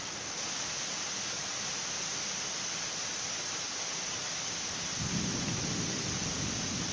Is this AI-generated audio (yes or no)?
no